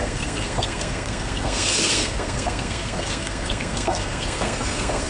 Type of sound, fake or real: fake